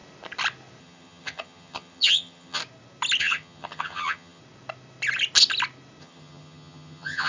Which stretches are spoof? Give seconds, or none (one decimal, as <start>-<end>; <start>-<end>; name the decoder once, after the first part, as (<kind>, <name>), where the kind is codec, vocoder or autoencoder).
0.8-2.6 (vocoder, HiFi-GAN); 3.2-4.4; 6.0-7.3